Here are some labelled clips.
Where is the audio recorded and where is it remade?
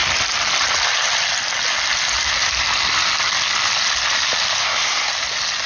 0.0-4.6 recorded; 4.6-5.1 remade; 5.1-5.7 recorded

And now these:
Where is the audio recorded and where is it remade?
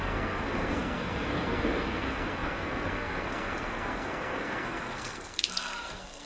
0.0-6.3 remade